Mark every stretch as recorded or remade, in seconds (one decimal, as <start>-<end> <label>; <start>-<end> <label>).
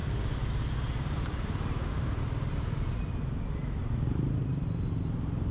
0.0-3.8 recorded; 3.8-5.5 remade